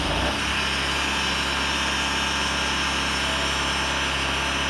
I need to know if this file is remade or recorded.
recorded